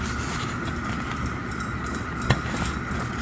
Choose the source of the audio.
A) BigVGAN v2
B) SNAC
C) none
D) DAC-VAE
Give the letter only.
C